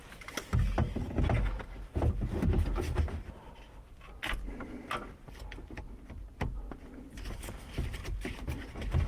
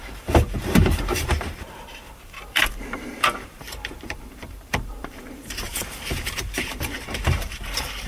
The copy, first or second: second